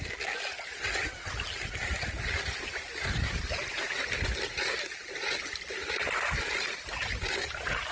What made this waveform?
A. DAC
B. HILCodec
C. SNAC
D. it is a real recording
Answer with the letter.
D